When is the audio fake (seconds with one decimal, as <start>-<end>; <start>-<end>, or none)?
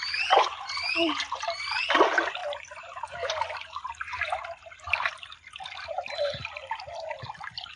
none